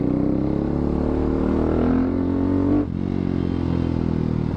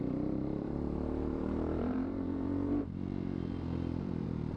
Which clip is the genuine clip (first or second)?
first